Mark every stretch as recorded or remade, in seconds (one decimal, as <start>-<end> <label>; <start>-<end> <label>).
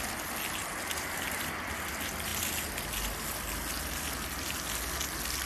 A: 0.0-5.5 recorded